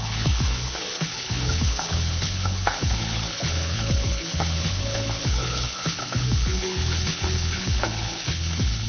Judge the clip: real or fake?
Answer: fake